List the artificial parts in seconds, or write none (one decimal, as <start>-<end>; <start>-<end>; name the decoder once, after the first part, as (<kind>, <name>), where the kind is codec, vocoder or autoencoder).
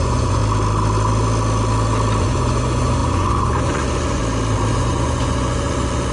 0.0-0.4 (vocoder, Vocos); 2.2-4.2; 4.7-6.1